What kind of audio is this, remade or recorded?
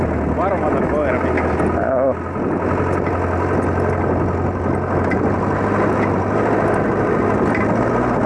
recorded